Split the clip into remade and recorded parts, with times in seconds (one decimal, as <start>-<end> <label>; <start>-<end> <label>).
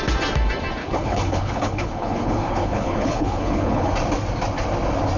0.0-0.8 recorded; 0.8-3.9 remade; 3.9-5.2 recorded